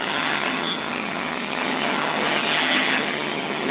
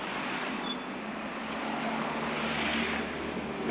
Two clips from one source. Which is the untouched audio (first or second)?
second